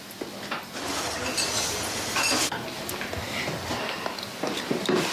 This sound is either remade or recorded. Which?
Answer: recorded